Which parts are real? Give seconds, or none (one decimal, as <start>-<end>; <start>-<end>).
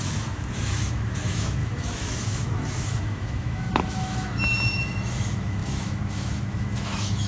none